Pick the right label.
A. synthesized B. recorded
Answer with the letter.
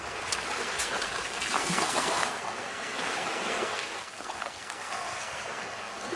A